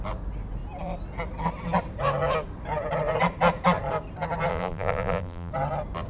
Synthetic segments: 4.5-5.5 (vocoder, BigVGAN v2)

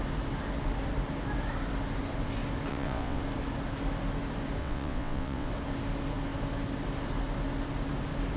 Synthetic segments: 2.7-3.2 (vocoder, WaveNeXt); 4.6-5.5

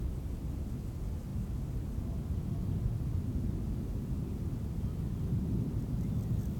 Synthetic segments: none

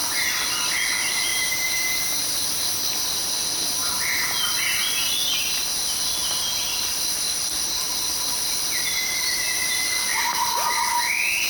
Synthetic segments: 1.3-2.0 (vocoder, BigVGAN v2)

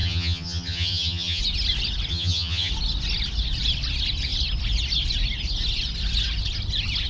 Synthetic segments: 0.0-1.4 (vocoder, HiFi-GAN); 2.1-2.7

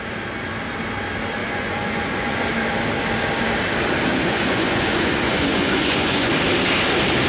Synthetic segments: 1.4-2.5 (vocoder, Vocos); 4.1-6.3